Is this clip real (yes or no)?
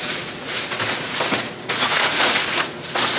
no